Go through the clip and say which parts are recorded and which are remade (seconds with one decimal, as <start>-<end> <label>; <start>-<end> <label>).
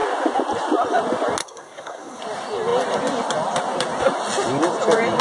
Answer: 0.0-1.4 recorded; 1.4-2.2 remade; 2.2-5.2 recorded